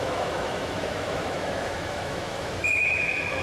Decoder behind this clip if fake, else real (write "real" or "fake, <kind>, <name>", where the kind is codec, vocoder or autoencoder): fake, autoencoder, DAC-VAE